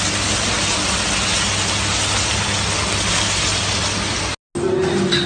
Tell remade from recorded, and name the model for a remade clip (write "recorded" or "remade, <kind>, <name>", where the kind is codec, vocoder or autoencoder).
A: recorded